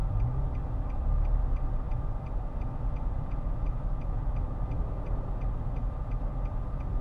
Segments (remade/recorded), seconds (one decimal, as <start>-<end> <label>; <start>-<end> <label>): 0.0-7.0 recorded